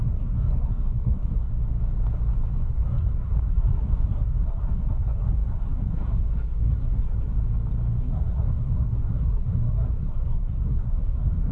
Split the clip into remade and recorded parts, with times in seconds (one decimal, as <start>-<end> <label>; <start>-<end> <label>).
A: 0.0-1.5 remade; 1.5-2.6 recorded; 2.6-7.4 remade; 7.4-8.0 recorded; 8.0-11.5 remade